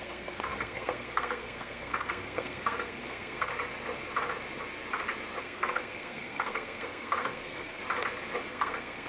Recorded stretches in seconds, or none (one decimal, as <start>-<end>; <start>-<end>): 3.5-5.4; 7.8-8.5